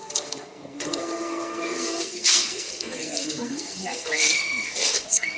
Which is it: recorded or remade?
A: remade